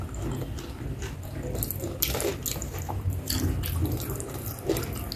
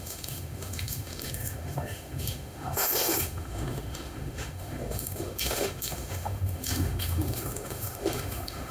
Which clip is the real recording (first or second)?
first